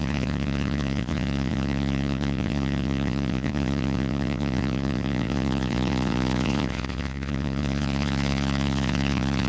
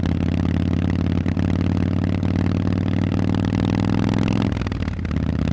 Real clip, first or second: second